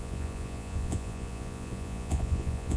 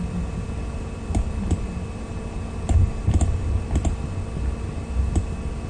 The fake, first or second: first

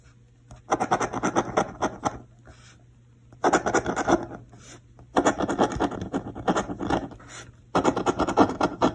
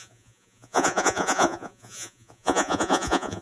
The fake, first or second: second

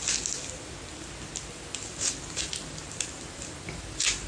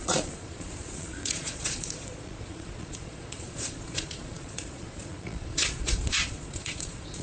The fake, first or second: second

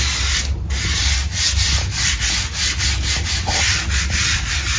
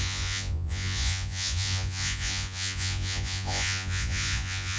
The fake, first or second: second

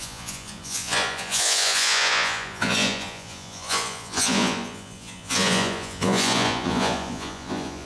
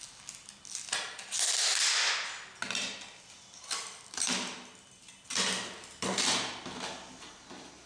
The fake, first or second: first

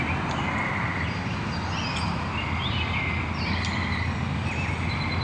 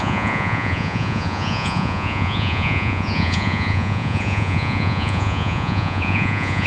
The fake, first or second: second